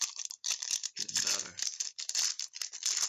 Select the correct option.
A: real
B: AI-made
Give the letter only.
A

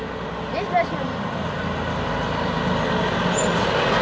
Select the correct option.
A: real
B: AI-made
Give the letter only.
A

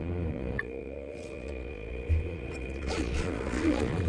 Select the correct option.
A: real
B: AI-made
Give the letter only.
B